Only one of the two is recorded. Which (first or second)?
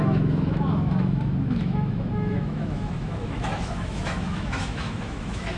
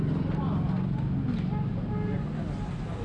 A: second